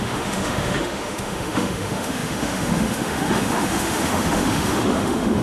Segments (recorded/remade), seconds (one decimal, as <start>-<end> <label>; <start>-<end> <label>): 0.0-5.4 remade